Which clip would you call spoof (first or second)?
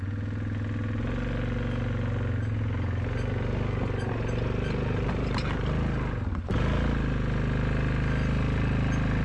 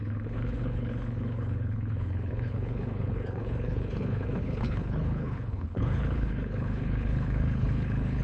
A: second